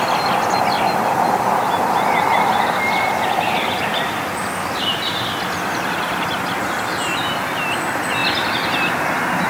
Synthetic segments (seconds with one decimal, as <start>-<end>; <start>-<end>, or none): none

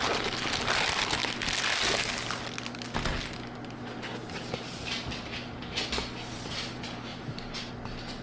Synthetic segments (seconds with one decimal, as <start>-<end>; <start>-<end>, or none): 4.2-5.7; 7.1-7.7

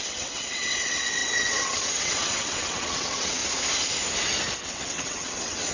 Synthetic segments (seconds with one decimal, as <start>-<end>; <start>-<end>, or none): 0.0-3.4; 4.6-5.7